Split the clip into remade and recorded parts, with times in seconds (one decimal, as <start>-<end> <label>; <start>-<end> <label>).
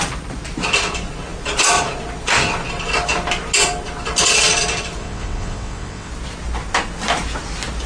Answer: 0.0-5.0 recorded; 5.0-6.1 remade; 6.1-7.9 recorded